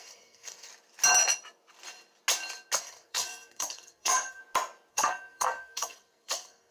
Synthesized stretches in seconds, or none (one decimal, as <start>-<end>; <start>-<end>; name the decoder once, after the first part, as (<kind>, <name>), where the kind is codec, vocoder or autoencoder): 0.0-0.7 (codec, SNAC); 2.8-4.4; 4.9-6.7